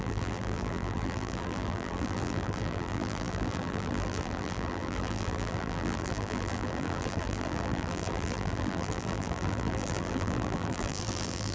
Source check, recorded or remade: remade